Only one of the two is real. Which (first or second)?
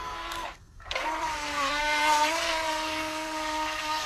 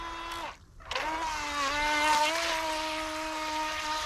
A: second